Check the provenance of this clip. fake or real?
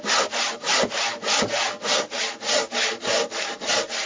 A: real